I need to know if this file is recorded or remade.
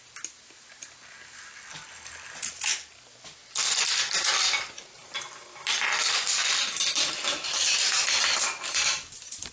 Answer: recorded